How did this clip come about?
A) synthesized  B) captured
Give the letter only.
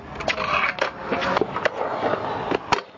B